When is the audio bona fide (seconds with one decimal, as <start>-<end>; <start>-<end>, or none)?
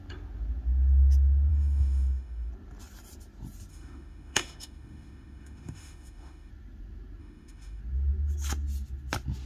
0.0-1.5; 2.5-3.7; 6.5-7.2; 7.8-9.5